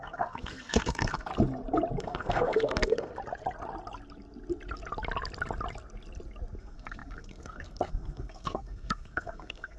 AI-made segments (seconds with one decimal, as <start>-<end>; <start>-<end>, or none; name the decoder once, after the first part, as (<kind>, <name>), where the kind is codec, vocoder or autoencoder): 0.0-1.3 (codec, SNAC); 2.0-3.1; 6.6-9.8